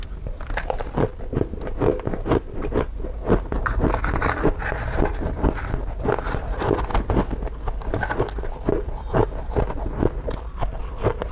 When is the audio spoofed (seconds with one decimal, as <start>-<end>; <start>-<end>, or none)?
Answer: none